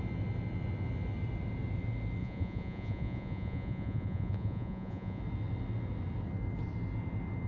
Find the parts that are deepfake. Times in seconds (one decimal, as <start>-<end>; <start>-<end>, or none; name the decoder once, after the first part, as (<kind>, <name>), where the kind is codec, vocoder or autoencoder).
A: 2.2-5.2 (vocoder, Vocos)